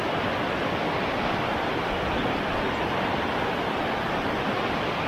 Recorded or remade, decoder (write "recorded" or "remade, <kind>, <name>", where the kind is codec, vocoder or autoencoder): recorded